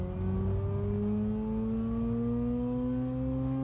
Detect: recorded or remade recorded